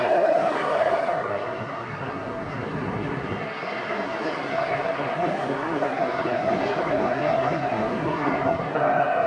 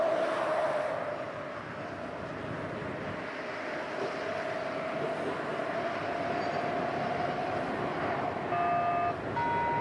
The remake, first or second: first